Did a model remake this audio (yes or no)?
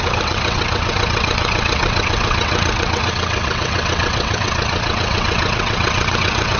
yes